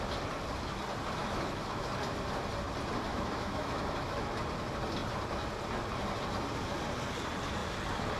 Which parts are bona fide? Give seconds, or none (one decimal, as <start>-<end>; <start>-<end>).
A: 0.0-1.2; 1.9-3.1; 4.4-8.2